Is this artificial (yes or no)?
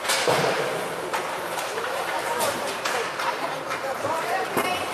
yes